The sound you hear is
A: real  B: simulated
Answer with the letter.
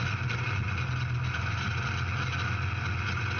A